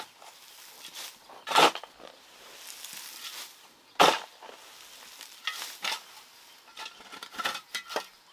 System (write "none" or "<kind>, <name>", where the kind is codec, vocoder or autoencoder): none